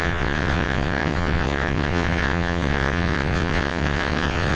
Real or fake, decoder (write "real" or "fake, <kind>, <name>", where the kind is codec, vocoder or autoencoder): fake, vocoder, WaveNeXt